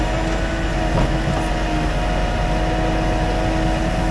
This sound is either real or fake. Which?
real